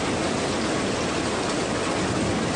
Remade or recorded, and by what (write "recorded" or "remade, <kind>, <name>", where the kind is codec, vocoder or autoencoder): recorded